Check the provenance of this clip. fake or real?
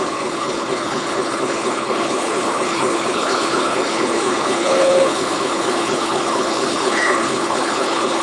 fake